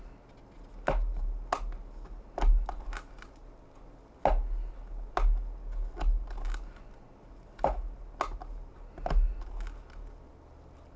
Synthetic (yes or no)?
no